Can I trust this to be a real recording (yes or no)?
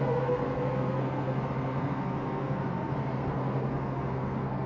no